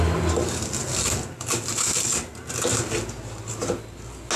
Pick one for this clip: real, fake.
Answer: real